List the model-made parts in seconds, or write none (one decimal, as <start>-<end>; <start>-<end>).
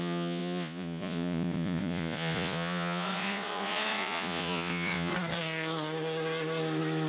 0.0-5.1